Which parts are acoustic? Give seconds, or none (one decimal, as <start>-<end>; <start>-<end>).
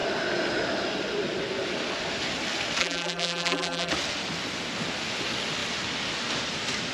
0.0-2.8; 3.9-6.9